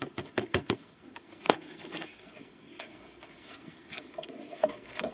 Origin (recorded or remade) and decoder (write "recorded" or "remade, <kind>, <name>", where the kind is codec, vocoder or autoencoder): remade, codec, SNAC